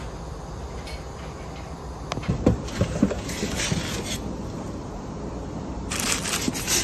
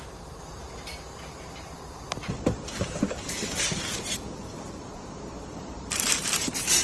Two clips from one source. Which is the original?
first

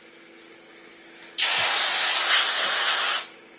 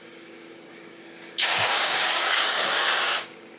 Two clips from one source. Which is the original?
first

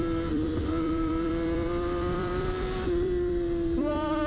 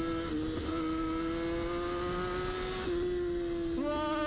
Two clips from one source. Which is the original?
second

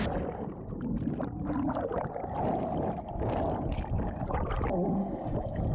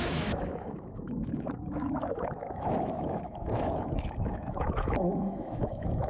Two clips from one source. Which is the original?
first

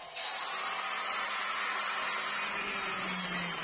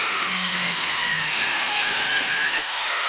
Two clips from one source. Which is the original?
first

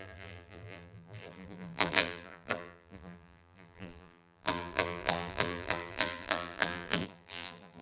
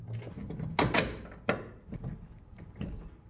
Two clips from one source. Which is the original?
second